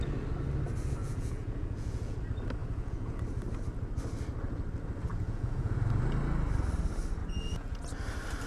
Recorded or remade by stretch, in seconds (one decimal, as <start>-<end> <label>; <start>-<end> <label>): 0.0-1.0 recorded; 1.0-2.2 remade; 2.2-2.6 recorded; 2.6-3.2 remade; 3.2-5.1 recorded; 5.1-5.8 remade; 5.8-7.2 recorded; 7.2-7.8 remade; 7.8-8.5 recorded